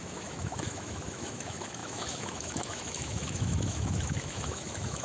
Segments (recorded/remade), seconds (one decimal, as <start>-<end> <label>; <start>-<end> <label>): 0.0-5.0 remade